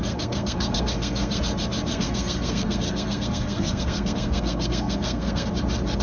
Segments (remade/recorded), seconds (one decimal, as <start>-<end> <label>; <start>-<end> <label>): 0.0-1.4 remade; 1.4-1.9 recorded; 1.9-5.5 remade; 5.5-6.0 recorded

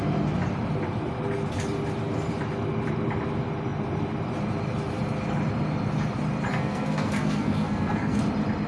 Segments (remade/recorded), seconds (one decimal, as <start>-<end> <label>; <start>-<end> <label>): 0.0-6.5 recorded; 6.5-8.2 remade; 8.2-8.7 recorded

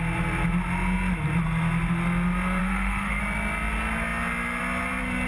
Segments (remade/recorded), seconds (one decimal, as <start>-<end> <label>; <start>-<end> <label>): 0.0-2.6 recorded; 2.6-3.2 remade; 3.2-5.3 recorded

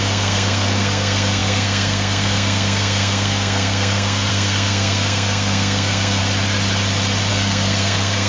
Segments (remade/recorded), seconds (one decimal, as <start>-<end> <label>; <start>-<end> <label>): 0.0-6.2 remade; 6.2-7.3 recorded; 7.3-8.3 remade

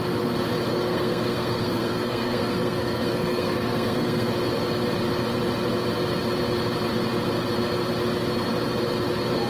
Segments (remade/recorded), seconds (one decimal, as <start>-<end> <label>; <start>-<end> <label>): 0.0-0.7 recorded; 0.7-4.3 remade; 4.3-9.5 recorded

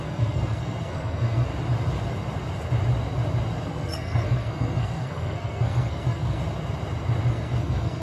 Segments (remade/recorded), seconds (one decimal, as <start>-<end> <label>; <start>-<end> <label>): 0.0-1.5 remade; 1.5-3.7 recorded; 3.7-6.4 remade; 6.4-7.3 recorded; 7.3-8.0 remade

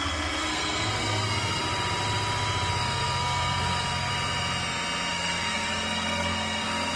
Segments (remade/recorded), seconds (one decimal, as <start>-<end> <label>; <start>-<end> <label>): 0.0-1.6 remade; 1.6-2.8 recorded; 2.8-4.1 remade; 4.1-5.1 recorded; 5.1-7.0 remade